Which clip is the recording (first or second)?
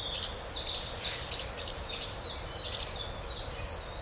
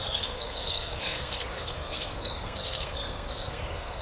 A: first